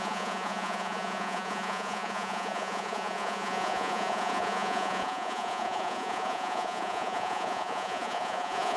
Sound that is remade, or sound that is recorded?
remade